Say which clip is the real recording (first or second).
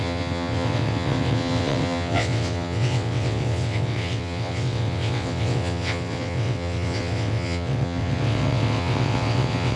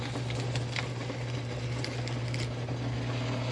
second